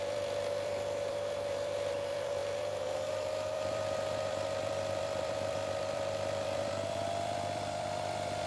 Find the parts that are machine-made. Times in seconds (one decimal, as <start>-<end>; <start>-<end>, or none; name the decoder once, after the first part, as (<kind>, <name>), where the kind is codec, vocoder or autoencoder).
0.0-8.5 (vocoder, BigVGAN v2)